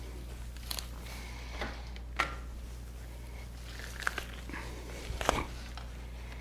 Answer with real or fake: real